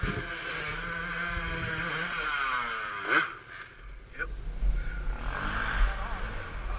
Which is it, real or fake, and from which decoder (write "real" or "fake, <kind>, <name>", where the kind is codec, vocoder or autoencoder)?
real